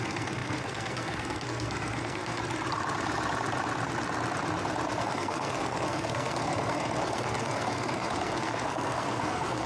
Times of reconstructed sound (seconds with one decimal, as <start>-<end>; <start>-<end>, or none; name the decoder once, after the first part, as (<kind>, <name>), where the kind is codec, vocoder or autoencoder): 0.0-2.4 (codec, SNAC); 5.0-9.7